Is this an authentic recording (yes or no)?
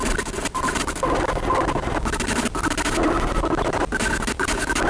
yes